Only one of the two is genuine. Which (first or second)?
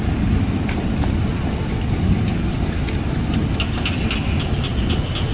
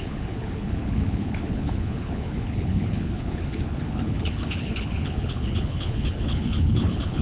first